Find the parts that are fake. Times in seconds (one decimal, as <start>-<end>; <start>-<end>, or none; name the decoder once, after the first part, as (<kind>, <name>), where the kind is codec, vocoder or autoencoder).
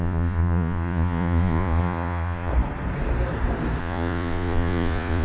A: 0.0-2.5 (vocoder, Vocos); 3.8-5.2